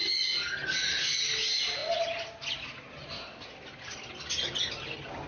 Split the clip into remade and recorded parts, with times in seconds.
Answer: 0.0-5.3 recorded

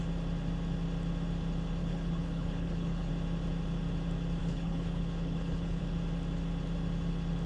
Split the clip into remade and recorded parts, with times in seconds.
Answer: 0.0-1.8 recorded; 1.8-3.1 remade; 3.1-4.4 recorded; 4.4-5.8 remade; 5.8-7.5 recorded

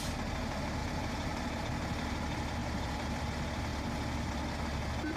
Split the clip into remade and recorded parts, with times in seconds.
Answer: 0.0-0.8 recorded; 0.8-1.6 remade; 1.6-2.6 recorded; 2.6-3.2 remade; 3.2-5.2 recorded

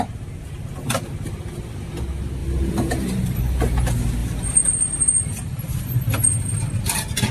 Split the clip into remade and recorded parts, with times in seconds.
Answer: 0.0-2.4 recorded; 2.4-3.4 remade; 3.4-4.2 recorded; 4.2-6.5 remade; 6.5-7.3 recorded

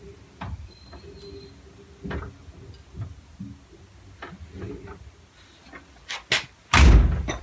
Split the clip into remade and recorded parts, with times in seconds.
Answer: 0.0-7.4 recorded